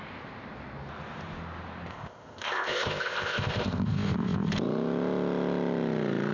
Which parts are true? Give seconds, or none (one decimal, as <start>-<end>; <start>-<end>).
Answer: 0.0-1.9; 4.5-6.3